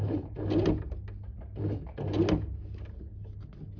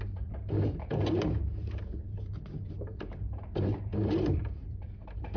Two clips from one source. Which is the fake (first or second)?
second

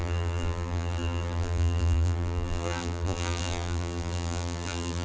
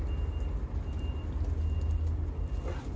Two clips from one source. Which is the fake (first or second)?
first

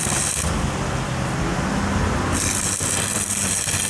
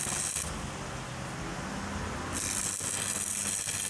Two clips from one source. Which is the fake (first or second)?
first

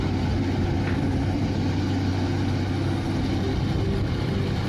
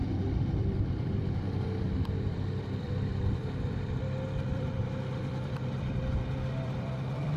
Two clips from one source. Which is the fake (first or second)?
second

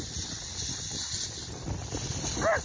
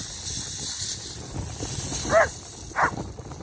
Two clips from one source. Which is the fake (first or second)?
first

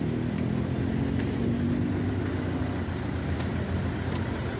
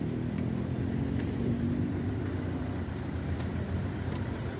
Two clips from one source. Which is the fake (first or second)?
second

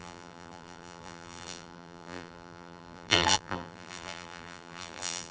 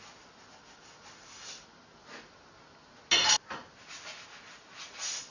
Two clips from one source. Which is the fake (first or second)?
first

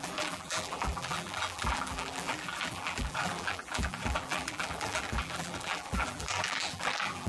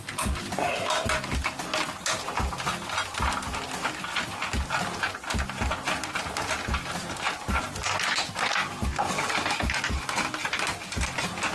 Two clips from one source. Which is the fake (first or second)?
first